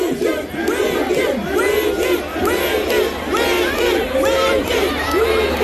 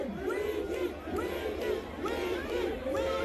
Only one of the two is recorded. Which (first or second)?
first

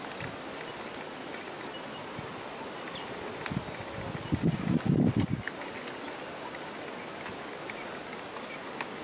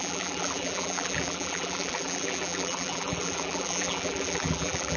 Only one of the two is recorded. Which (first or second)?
first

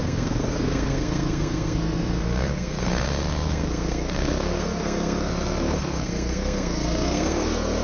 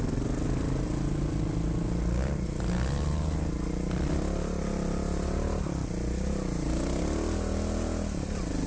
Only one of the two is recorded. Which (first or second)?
second